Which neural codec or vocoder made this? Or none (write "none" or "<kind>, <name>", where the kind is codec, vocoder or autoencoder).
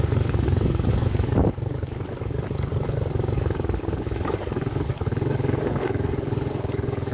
codec, DAC